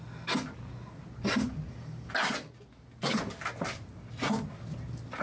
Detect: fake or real real